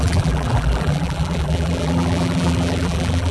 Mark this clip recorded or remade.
remade